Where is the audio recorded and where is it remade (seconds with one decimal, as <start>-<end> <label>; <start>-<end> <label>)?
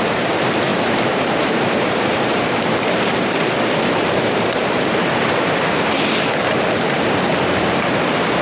0.0-0.7 recorded; 0.7-4.8 remade; 4.8-6.4 recorded; 6.4-7.9 remade; 7.9-8.4 recorded